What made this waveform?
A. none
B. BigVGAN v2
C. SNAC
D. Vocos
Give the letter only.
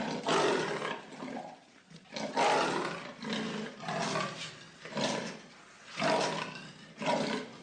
A